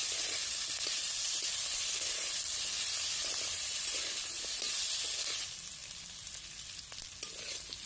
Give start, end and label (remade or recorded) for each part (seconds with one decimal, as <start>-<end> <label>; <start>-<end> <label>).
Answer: 0.0-4.0 remade; 4.0-7.9 recorded